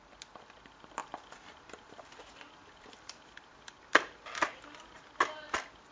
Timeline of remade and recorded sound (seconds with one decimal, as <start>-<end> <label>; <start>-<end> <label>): 0.0-1.0 recorded; 1.0-4.3 remade; 4.3-5.9 recorded